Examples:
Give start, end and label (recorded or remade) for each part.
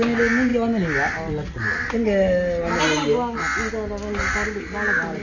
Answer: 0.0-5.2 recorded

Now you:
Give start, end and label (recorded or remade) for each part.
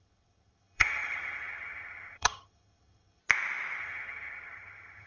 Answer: 0.0-3.2 remade; 3.2-3.8 recorded; 3.8-5.1 remade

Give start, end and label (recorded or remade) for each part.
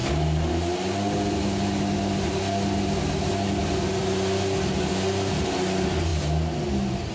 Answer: 0.0-7.1 recorded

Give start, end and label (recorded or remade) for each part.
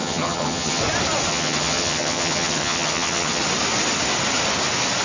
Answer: 0.0-0.8 remade; 0.8-1.3 recorded; 1.3-3.4 remade; 3.4-5.0 recorded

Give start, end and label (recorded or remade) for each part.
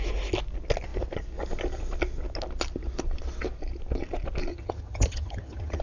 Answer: 0.0-4.5 recorded; 4.5-5.8 remade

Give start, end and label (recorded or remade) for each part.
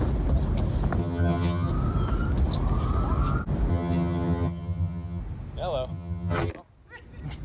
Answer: 0.0-1.0 recorded; 1.0-1.7 remade; 1.7-3.7 recorded; 3.7-5.2 remade; 5.2-5.9 recorded; 5.9-6.5 remade; 6.5-7.4 recorded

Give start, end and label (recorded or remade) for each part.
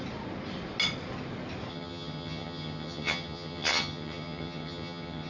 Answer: 0.0-1.7 recorded; 1.7-5.3 remade